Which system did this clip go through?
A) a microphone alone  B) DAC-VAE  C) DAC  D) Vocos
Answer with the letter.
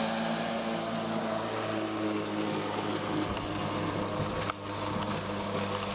A